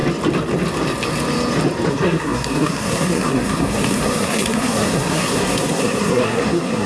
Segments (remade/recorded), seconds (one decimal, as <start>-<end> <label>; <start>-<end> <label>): 0.0-1.9 recorded; 1.9-6.9 remade